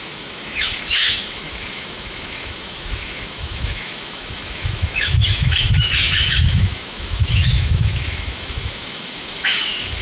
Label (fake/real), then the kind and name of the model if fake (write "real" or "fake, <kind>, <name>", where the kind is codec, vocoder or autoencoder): fake, autoencoder, DAC-VAE